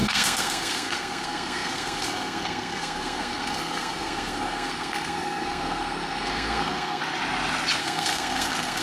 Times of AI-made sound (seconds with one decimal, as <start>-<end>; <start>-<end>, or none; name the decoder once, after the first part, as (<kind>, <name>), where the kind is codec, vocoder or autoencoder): 0.0-7.0 (codec, SNAC); 7.8-8.8